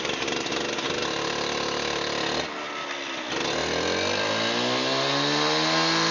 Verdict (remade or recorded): recorded